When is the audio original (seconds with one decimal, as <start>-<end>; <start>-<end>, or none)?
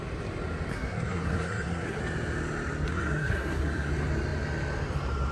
0.0-0.7; 2.0-2.9; 3.9-5.3